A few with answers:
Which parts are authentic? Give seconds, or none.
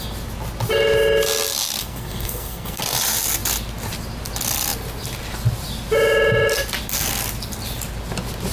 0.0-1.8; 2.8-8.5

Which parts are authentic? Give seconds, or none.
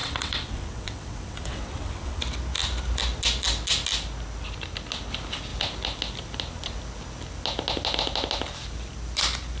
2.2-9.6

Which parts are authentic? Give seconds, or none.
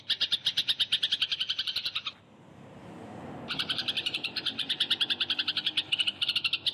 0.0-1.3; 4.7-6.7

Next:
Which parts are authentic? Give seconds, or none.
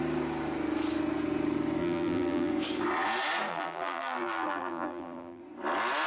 0.0-1.8; 2.5-3.5; 5.4-6.1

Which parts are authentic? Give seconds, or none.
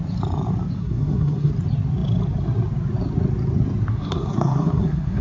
0.0-0.8; 1.5-3.9